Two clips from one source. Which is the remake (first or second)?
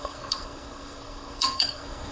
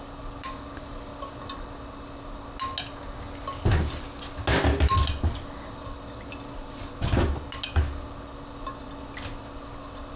first